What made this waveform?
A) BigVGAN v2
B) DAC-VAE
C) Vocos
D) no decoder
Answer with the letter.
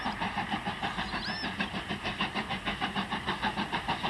D